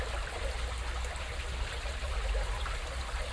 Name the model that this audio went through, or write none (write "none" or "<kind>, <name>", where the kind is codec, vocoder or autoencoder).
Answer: none